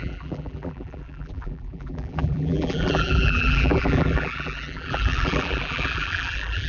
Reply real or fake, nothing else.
fake